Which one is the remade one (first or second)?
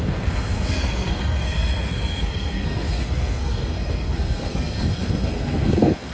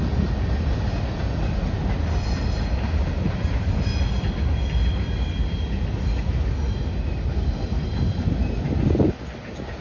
first